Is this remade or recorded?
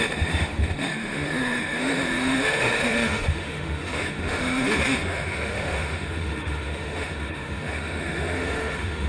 remade